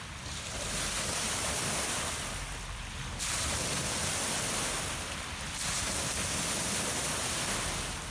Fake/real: real